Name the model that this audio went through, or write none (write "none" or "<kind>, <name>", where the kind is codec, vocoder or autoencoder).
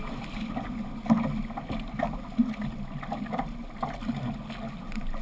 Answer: none